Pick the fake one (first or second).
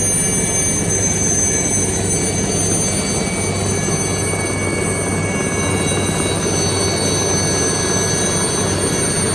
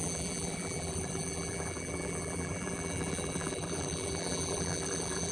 second